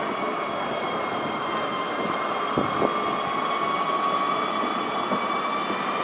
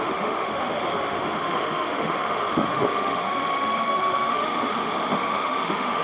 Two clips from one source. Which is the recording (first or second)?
first